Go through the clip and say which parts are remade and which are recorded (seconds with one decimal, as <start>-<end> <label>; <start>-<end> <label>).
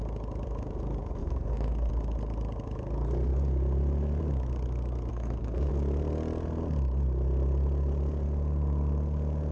0.0-1.2 recorded; 1.2-1.9 remade; 1.9-5.1 recorded; 5.1-5.7 remade; 5.7-9.5 recorded